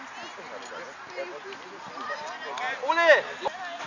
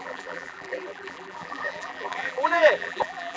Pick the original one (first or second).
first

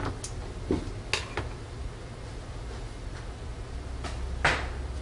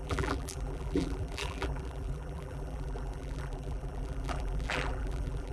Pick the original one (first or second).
first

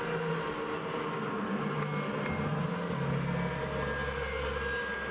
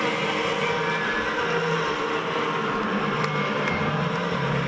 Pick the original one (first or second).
first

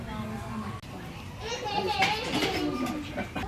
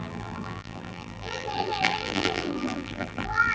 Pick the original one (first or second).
first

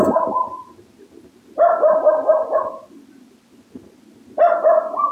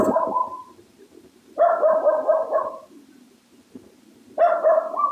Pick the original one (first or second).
first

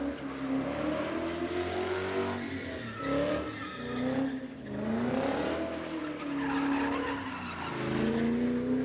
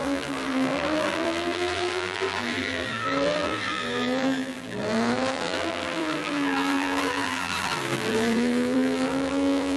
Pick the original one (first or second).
first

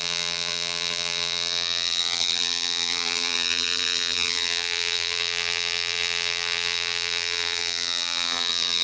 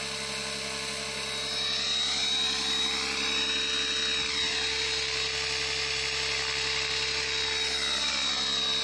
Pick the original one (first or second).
second